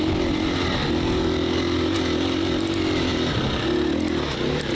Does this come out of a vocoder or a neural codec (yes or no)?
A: no